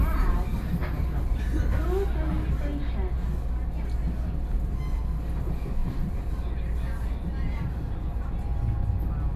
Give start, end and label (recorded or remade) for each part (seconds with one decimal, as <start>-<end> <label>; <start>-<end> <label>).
0.0-0.8 recorded; 0.8-1.6 remade; 1.6-5.8 recorded; 5.8-6.6 remade; 6.6-9.4 recorded